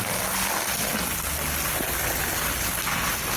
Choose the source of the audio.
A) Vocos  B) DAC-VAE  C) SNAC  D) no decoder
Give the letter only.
D